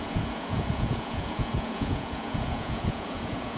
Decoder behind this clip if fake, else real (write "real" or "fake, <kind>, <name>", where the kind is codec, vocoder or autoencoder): fake, vocoder, Vocos